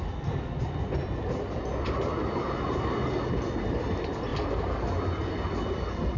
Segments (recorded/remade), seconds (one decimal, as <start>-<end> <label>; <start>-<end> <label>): 0.0-6.2 recorded